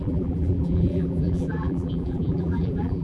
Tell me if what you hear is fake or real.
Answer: fake